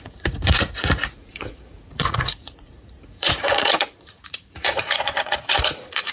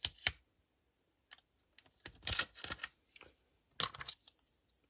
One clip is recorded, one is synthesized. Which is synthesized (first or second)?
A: first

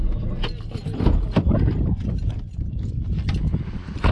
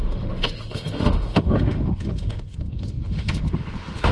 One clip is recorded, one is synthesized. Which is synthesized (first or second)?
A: second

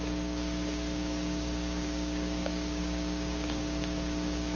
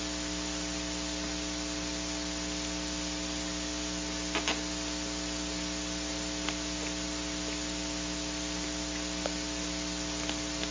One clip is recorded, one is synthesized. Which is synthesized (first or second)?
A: first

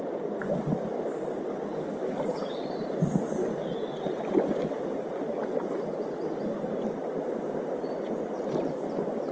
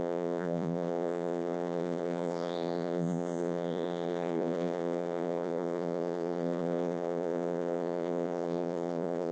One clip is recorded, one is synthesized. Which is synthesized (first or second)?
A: second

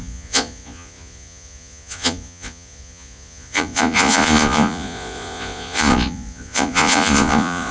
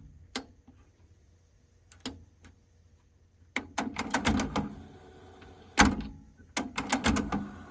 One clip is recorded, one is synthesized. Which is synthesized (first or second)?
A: first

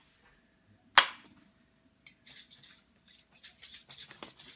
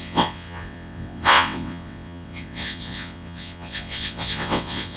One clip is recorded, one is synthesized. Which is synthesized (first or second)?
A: second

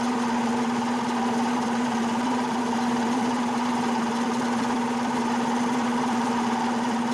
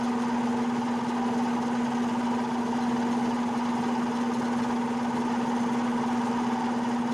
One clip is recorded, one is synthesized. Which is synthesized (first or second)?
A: first